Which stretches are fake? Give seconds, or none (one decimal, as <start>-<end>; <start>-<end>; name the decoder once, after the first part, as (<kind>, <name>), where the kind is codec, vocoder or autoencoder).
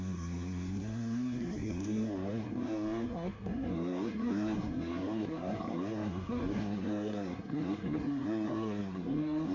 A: 0.0-9.5 (codec, SNAC)